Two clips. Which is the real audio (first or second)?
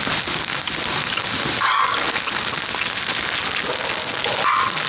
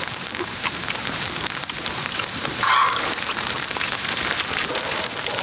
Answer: first